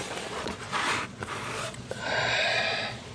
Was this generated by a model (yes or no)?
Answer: yes